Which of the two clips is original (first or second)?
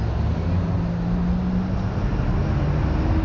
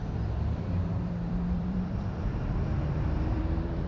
first